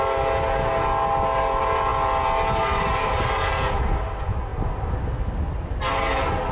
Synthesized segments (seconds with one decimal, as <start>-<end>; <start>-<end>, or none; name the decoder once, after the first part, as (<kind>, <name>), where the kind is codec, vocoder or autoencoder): none